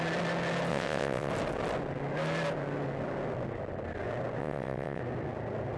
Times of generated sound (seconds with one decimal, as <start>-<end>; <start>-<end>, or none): 0.7-1.3; 4.4-5.0

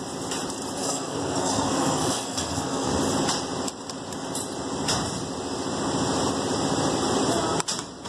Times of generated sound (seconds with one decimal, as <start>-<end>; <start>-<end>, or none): 0.8-2.9

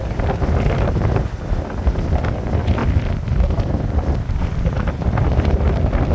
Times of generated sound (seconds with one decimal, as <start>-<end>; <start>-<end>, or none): none

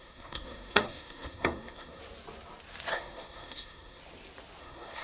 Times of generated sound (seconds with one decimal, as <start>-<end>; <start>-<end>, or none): 0.0-2.0; 2.9-4.0; 4.6-5.0

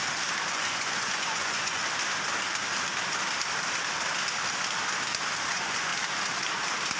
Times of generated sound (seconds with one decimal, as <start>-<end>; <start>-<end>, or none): 0.5-1.8; 5.5-5.9

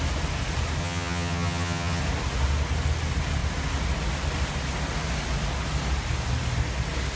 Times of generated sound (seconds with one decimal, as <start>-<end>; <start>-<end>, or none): 0.8-2.0

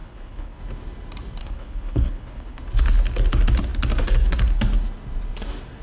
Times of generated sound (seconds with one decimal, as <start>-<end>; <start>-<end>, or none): 0.0-0.6; 1.4-2.6